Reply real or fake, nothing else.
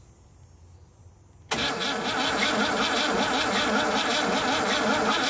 real